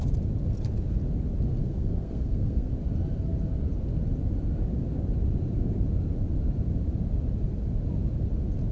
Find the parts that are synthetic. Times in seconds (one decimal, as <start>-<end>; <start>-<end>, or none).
1.6-2.7

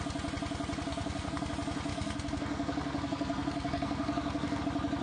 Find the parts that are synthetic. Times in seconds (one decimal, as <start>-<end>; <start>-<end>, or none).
0.9-1.5; 1.9-4.6

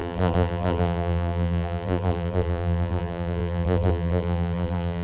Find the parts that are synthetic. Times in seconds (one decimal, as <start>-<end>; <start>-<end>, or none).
0.0-5.0

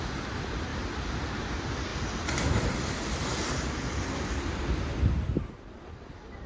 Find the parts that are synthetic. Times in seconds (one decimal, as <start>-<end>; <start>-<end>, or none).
none

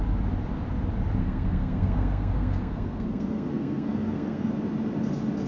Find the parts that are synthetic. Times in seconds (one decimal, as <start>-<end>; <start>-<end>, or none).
1.2-4.5

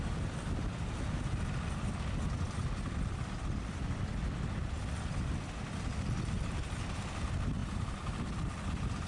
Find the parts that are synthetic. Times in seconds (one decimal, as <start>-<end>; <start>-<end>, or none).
none